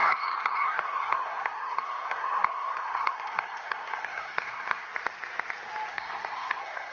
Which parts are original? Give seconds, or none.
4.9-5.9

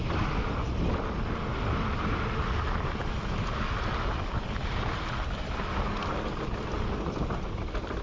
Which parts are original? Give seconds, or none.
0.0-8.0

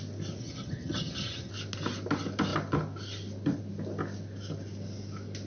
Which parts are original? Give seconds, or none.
0.0-0.4; 1.5-5.5

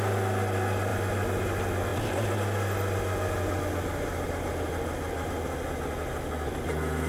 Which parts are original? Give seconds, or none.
0.0-7.1